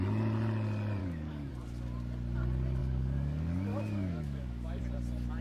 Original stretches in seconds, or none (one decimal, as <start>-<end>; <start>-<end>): 0.0-1.0; 1.5-2.8; 4.8-5.4